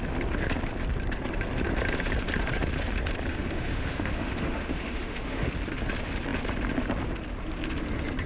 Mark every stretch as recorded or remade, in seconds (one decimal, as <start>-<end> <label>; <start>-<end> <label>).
0.0-3.3 recorded; 3.3-5.5 remade; 5.5-8.3 recorded